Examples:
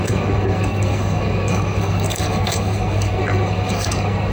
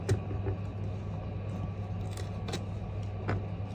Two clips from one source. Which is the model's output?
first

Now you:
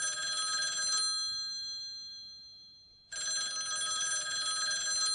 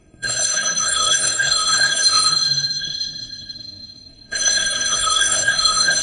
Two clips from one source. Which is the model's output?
second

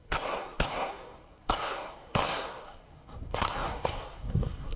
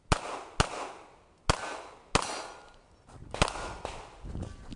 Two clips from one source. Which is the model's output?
first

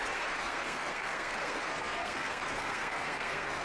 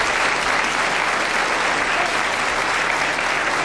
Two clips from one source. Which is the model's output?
first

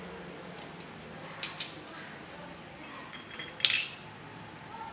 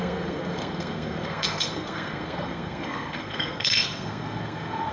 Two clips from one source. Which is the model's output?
second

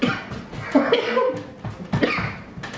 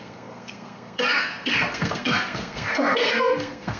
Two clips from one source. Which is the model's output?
second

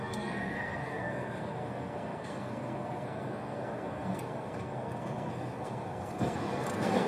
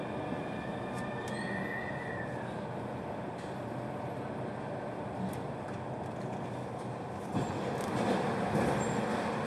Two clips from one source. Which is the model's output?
first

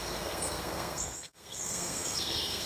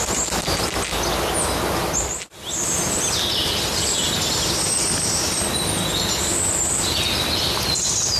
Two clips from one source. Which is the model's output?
first